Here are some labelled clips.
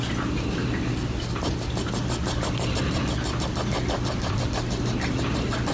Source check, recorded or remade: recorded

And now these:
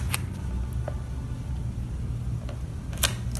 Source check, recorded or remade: recorded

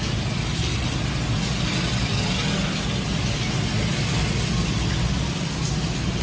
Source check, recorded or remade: recorded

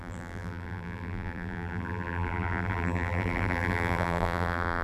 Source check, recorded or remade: remade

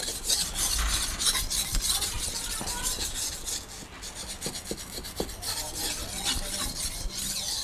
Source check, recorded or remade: recorded